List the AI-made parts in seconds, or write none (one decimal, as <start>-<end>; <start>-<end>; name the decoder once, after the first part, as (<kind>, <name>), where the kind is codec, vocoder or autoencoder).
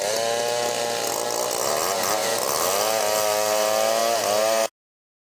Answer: none